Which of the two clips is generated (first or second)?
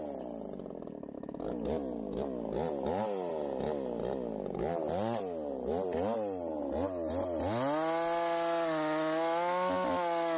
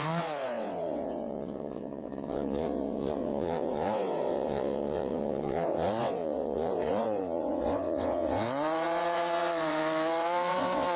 second